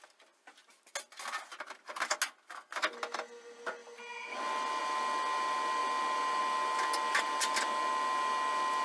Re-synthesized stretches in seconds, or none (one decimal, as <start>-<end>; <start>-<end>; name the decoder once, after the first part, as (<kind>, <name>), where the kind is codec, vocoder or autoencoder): none